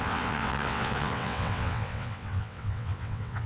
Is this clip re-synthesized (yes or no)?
yes